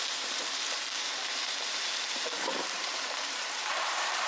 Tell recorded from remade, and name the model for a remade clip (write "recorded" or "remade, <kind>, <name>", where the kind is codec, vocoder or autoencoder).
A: remade, vocoder, BigVGAN v2